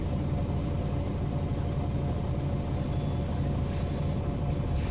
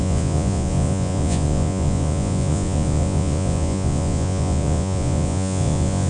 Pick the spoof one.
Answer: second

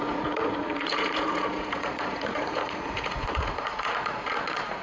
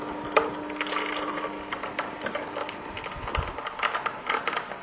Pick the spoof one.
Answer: first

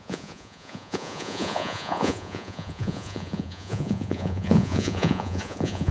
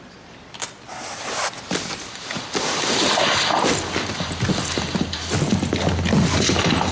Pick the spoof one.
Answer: first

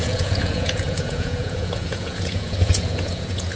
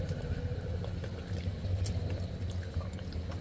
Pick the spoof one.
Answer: first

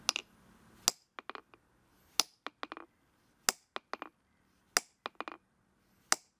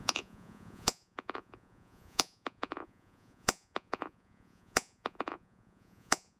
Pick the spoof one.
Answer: second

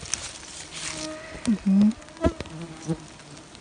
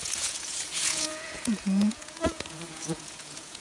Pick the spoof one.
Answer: second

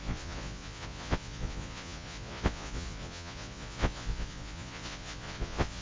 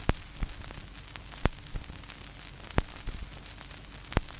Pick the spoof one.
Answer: first